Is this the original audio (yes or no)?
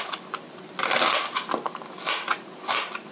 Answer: yes